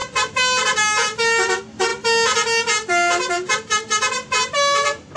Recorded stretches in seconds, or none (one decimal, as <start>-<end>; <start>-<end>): 0.0-5.2